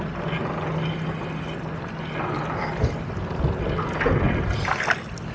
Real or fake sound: real